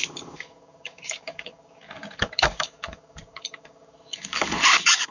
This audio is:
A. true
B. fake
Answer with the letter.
B